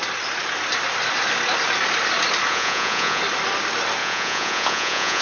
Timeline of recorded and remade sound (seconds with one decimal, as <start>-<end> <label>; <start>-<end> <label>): 0.0-2.5 recorded; 2.5-3.2 remade; 3.2-4.0 recorded; 4.0-5.2 remade